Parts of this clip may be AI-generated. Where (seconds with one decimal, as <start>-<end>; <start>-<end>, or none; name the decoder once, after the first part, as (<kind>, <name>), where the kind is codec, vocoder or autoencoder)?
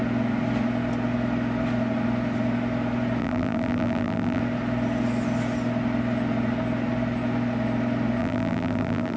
3.2-4.4 (vocoder, BigVGAN v2); 8.2-9.2